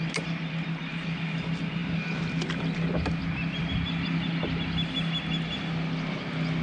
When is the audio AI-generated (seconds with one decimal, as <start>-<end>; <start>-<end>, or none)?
none